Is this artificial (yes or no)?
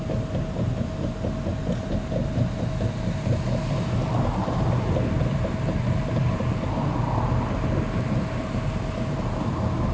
no